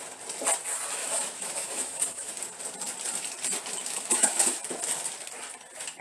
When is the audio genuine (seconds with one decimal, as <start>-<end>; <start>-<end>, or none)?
0.0-1.0; 2.3-3.8; 4.6-6.0